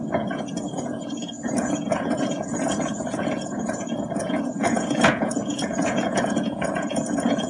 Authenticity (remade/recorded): remade